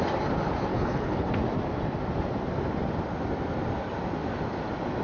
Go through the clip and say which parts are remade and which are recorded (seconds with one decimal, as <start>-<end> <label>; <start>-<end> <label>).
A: 0.0-0.7 recorded; 0.7-1.3 remade; 1.3-5.0 recorded